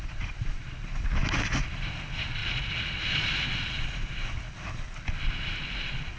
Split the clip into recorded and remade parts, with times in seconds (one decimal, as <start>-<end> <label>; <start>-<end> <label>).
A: 0.0-1.2 remade; 1.2-1.7 recorded; 1.7-2.4 remade; 2.4-6.2 recorded